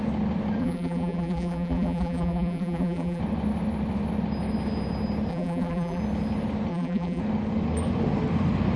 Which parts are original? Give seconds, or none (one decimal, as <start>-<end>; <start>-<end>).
0.0-0.6; 3.2-5.3; 6.0-6.7; 7.2-8.8